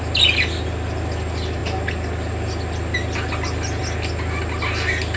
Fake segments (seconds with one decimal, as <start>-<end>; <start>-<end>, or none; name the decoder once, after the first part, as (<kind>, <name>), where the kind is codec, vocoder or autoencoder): none